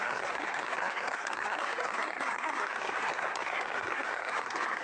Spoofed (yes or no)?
yes